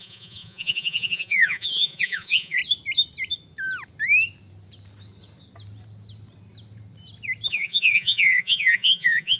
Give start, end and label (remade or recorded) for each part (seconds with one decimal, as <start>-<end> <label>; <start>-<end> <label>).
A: 0.0-2.6 remade; 2.6-7.5 recorded; 7.5-9.4 remade